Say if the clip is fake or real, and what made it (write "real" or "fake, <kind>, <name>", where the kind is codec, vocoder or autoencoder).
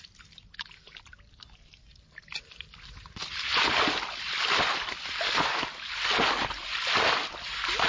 real